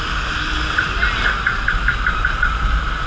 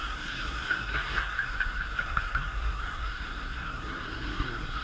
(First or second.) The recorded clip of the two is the first